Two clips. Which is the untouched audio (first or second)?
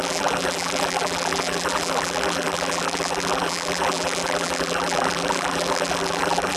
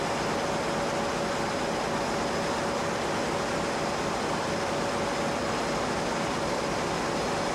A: second